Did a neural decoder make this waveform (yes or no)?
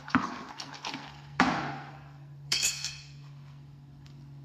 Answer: yes